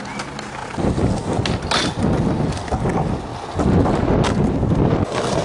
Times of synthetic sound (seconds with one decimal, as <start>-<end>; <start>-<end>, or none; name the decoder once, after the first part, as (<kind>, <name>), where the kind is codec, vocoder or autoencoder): none